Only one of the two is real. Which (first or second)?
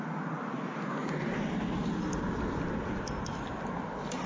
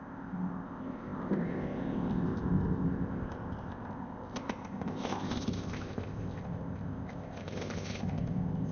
first